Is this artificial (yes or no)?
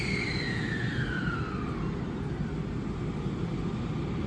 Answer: no